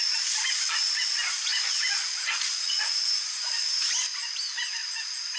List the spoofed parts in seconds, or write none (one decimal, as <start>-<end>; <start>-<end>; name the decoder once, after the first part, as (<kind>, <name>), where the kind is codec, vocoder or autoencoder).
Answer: 1.5-2.9 (vocoder, Vocos)